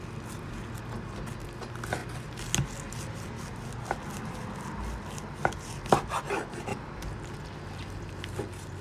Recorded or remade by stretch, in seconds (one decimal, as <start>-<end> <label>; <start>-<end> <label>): 0.0-8.8 recorded